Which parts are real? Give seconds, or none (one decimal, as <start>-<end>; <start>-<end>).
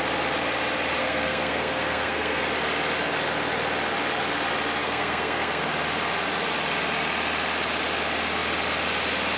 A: 0.0-1.0; 2.4-4.8; 5.6-9.4